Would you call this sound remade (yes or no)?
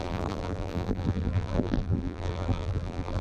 yes